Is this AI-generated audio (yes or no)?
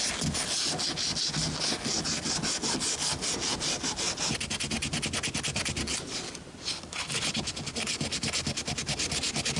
no